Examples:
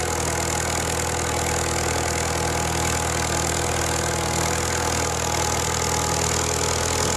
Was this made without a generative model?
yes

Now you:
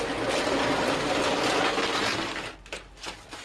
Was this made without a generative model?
yes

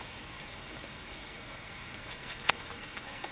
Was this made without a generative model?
no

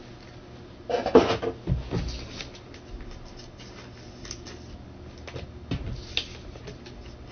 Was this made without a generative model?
yes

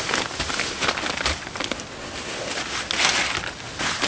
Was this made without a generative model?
yes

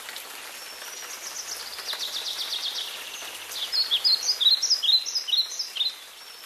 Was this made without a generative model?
yes